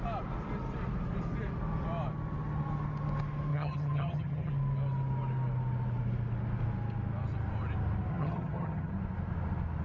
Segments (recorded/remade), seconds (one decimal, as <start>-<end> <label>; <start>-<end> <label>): 0.0-3.5 recorded; 3.5-4.5 remade; 4.5-8.1 recorded; 8.1-8.9 remade; 8.9-9.8 recorded